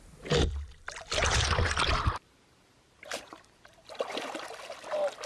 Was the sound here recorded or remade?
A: remade